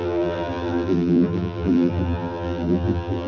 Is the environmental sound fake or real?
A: fake